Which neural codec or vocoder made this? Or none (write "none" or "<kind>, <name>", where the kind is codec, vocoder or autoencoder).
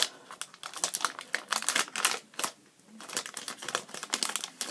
none